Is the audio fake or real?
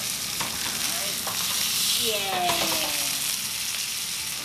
real